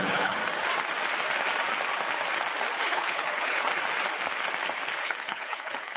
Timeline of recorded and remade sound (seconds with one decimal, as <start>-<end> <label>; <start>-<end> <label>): 0.0-0.4 remade; 0.4-2.8 recorded; 2.8-3.7 remade; 3.7-5.0 recorded; 5.0-6.0 remade